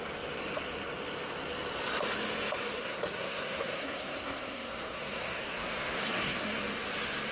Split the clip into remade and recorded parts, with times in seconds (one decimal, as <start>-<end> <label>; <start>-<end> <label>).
0.0-2.8 recorded; 2.8-6.6 remade; 6.6-7.3 recorded